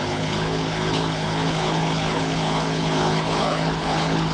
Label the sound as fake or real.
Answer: fake